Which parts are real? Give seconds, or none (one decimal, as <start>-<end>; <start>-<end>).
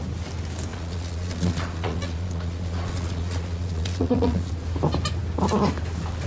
0.0-0.7; 4.5-6.3